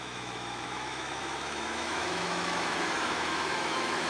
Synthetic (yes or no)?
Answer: yes